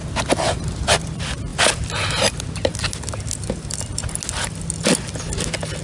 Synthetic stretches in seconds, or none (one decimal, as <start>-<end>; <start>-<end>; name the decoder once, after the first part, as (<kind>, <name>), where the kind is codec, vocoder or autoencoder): none